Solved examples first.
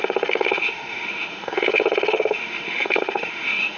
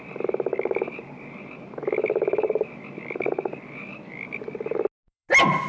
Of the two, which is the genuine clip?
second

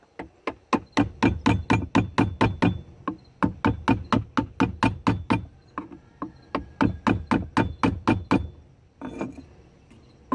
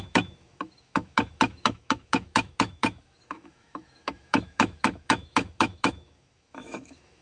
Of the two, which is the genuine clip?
first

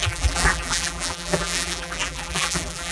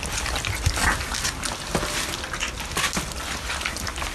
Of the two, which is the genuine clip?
second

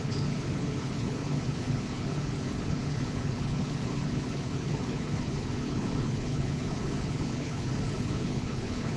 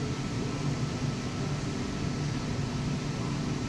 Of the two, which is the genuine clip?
second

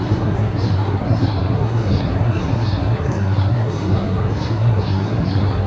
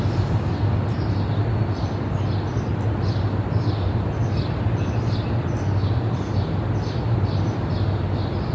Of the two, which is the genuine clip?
second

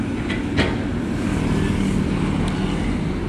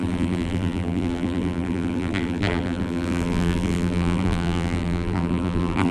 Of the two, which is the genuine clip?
first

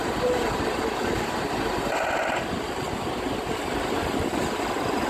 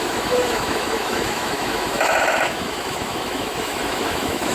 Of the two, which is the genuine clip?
first